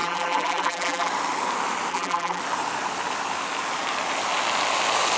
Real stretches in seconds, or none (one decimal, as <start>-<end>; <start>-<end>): 1.1-1.9; 2.4-5.2

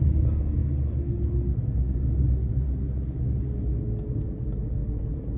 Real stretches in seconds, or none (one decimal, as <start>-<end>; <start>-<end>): 0.0-5.4

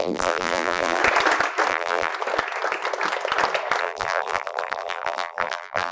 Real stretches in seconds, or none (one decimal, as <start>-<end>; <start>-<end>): 1.0-1.7; 2.1-3.8

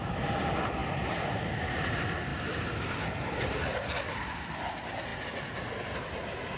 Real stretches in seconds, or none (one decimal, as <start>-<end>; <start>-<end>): 0.0-6.6

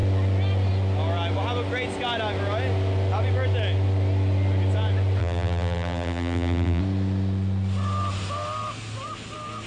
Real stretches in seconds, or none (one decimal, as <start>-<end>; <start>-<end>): 0.0-5.2; 6.8-9.7